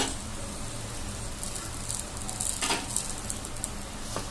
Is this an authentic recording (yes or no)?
yes